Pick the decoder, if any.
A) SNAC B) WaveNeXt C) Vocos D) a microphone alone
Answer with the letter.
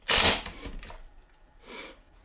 D